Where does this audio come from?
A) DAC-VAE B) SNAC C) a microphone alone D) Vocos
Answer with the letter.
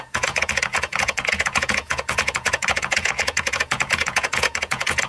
D